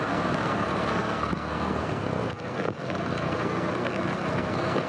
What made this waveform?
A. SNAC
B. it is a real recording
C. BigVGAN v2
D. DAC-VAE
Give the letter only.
A